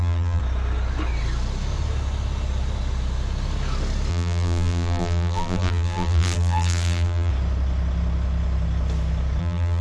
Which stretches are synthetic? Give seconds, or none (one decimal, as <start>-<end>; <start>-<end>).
0.0-0.4; 4.1-7.3; 9.4-9.8